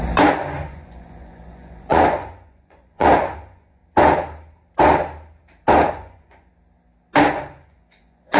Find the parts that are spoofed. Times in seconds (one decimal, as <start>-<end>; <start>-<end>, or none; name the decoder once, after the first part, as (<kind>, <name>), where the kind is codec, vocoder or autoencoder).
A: 0.0-3.8 (vocoder, Vocos); 5.9-6.5; 7.3-8.4